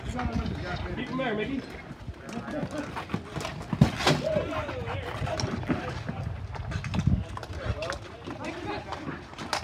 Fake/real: real